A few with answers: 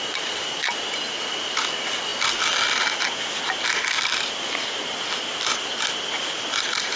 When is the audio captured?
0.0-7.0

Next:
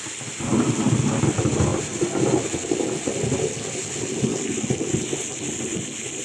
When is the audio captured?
0.0-6.2

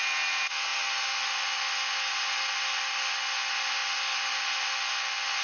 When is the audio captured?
0.0-5.4

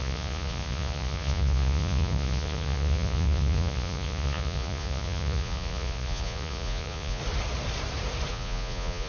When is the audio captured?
7.2-8.3

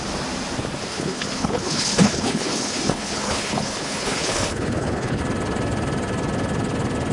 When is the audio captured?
0.0-0.9; 5.2-7.1